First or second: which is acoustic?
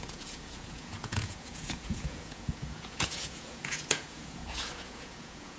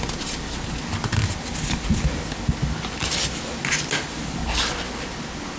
second